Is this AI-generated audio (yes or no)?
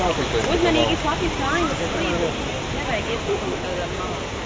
no